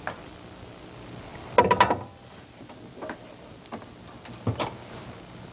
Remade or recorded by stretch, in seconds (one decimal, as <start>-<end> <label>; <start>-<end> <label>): 0.0-5.5 recorded